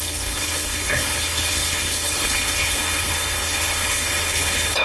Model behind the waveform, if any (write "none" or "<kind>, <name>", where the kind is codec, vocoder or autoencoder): codec, HILCodec